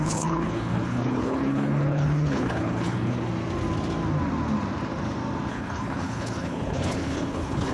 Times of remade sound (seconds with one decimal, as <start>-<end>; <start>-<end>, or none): 0.0-3.3; 5.5-7.7